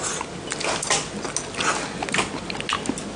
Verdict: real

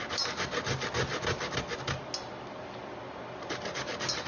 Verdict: real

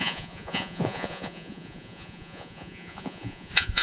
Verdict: fake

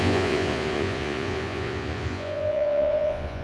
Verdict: fake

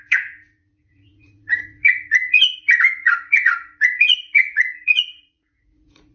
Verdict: fake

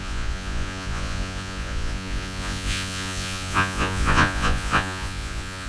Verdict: fake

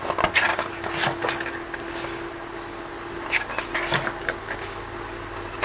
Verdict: real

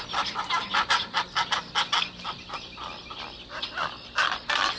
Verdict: real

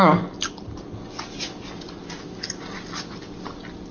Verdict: real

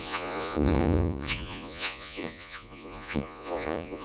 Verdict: fake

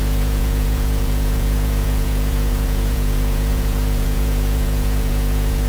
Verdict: fake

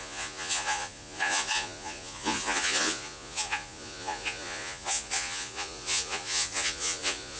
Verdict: fake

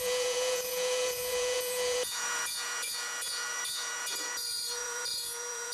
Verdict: fake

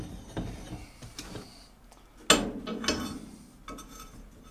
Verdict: real